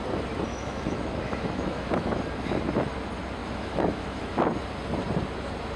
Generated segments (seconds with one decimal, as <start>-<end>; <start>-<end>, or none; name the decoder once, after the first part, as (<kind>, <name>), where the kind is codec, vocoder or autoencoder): 0.5-2.2 (autoencoder, DAC-VAE); 3.4-4.3